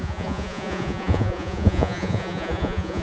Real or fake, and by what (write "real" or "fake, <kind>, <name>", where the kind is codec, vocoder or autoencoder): fake, vocoder, Vocos